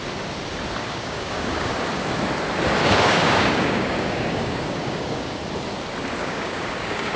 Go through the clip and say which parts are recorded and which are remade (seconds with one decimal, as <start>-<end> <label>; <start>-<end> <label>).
0.0-0.8 recorded; 0.8-2.2 remade; 2.2-2.8 recorded; 2.8-5.4 remade; 5.4-6.2 recorded; 6.2-7.2 remade

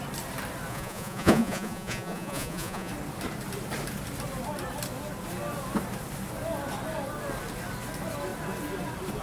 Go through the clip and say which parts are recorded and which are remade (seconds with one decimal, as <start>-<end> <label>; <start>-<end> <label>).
0.0-0.7 recorded; 0.7-2.9 remade; 2.9-9.2 recorded

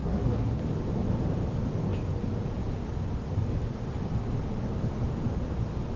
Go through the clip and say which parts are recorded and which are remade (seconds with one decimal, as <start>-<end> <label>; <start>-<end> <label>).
0.0-0.6 remade; 0.6-6.0 recorded

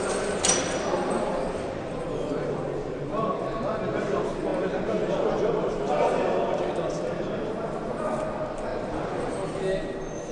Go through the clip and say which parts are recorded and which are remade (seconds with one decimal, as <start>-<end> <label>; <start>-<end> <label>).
0.0-10.3 recorded

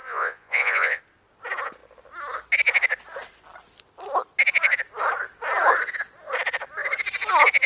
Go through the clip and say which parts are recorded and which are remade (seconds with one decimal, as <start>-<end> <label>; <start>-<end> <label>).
0.0-1.0 remade; 1.0-7.7 recorded

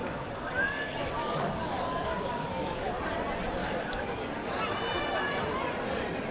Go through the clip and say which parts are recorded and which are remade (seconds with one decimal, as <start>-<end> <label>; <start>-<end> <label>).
0.0-2.9 remade; 2.9-3.6 recorded; 3.6-4.6 remade; 4.6-6.3 recorded

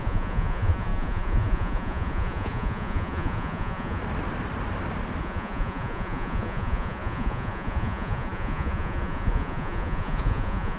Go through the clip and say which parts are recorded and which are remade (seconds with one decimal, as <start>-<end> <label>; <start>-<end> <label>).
0.0-4.0 remade; 4.0-5.2 recorded; 5.2-10.8 remade

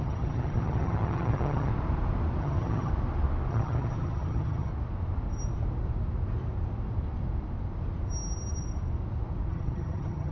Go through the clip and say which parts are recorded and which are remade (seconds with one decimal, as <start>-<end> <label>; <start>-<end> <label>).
0.0-1.7 remade; 1.7-2.4 recorded; 2.4-2.9 remade; 2.9-3.5 recorded; 3.5-4.7 remade; 4.7-9.5 recorded; 9.5-10.3 remade